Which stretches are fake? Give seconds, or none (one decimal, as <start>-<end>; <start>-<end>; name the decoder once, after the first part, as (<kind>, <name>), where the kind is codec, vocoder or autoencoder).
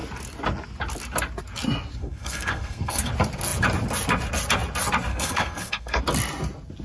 2.0-3.1 (codec, SNAC); 5.1-6.0